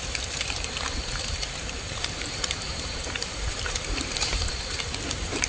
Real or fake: fake